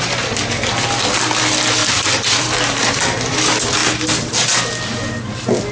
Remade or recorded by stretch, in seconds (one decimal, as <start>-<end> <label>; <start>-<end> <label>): 0.0-5.7 recorded